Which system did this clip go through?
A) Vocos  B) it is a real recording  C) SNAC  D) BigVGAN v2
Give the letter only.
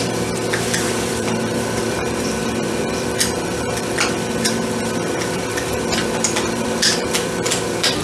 D